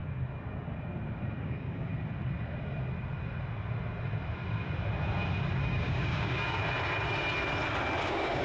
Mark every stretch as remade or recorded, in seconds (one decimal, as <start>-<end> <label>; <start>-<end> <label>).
0.0-1.4 recorded; 1.4-1.9 remade; 1.9-5.6 recorded; 5.6-6.6 remade; 6.6-8.0 recorded; 8.0-8.4 remade